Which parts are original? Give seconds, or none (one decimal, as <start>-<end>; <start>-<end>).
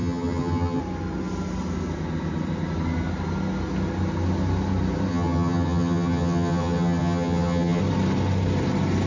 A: 0.8-5.1; 7.8-9.1